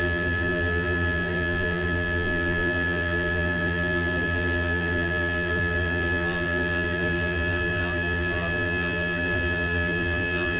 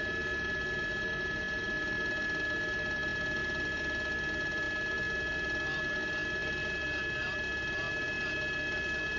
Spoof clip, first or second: first